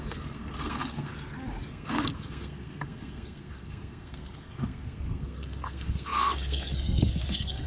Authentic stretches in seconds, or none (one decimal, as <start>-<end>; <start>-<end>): 1.1-1.7